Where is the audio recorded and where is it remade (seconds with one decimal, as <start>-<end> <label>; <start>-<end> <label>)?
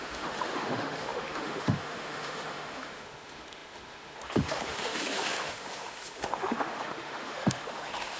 0.0-8.2 remade